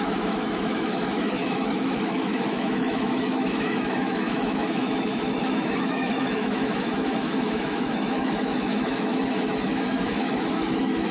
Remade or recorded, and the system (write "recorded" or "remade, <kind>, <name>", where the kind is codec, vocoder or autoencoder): remade, autoencoder, DAC-VAE